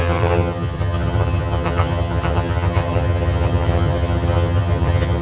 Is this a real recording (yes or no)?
no